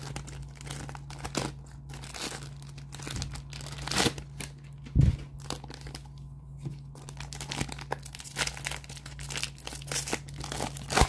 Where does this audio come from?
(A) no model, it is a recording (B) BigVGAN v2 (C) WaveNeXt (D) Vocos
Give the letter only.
A